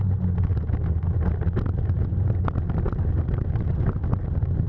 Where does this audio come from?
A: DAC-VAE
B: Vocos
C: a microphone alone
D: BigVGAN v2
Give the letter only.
C